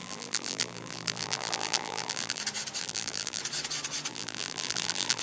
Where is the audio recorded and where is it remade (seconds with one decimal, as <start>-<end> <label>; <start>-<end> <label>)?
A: 0.0-2.4 remade; 2.4-2.8 recorded; 2.8-3.4 remade; 3.4-4.1 recorded; 4.1-5.2 remade